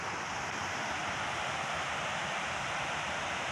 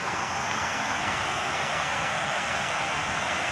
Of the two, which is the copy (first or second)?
second